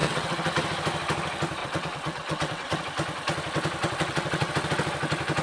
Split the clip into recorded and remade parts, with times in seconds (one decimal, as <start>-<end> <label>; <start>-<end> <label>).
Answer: 0.0-0.5 remade; 0.5-1.6 recorded; 1.6-2.8 remade; 2.8-3.8 recorded; 3.8-4.5 remade; 4.5-5.4 recorded